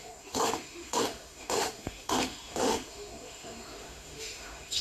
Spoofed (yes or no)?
yes